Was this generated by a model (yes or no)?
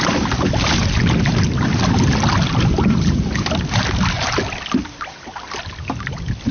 no